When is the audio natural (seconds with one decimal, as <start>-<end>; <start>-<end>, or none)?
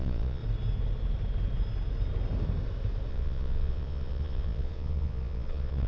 0.4-3.1